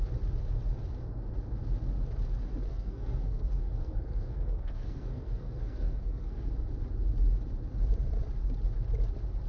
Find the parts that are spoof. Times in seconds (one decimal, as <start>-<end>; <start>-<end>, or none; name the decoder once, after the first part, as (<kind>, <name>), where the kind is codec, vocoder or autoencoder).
2.7-6.5 (codec, SNAC)